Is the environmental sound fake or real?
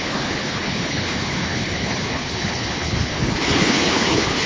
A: fake